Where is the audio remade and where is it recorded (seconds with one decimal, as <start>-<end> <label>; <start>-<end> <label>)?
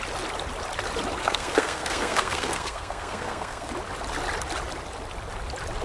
0.0-1.2 recorded; 1.2-3.7 remade; 3.7-5.8 recorded